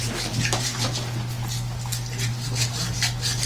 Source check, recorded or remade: recorded